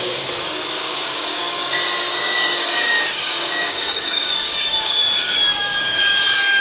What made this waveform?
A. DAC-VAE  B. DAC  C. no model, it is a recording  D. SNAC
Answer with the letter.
B